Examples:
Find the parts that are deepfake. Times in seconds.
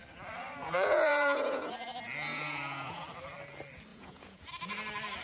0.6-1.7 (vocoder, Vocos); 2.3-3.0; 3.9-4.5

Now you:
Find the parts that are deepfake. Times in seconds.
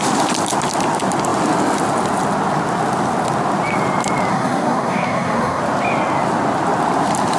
4.3-5.6 (codec, SNAC)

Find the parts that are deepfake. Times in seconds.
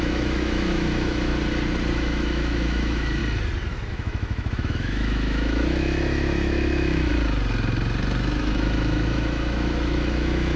0.0-1.3 (autoencoder, DAC-VAE); 1.9-3.2; 3.9-7.1; 8.4-10.6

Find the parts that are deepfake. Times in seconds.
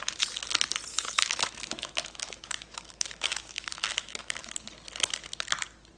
0.9-4.5 (autoencoder, DAC-VAE)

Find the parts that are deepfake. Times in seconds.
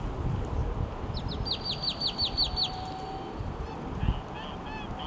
none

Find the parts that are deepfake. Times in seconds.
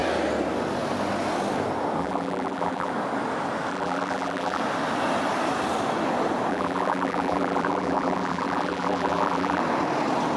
2.0-2.9 (vocoder, BigVGAN v2); 3.7-4.6; 6.5-9.6